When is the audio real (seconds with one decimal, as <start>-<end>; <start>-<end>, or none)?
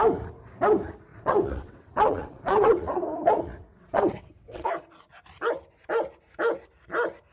0.0-1.1; 4.7-7.3